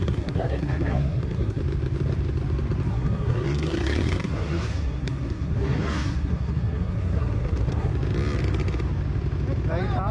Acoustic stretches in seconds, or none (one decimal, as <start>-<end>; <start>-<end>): 1.6-2.9; 7.9-10.1